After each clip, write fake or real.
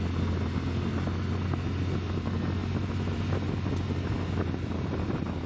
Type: real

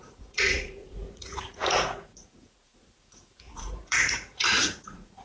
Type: fake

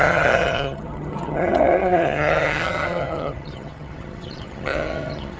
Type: fake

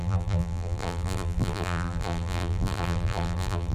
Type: fake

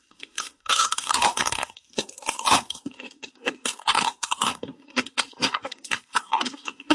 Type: fake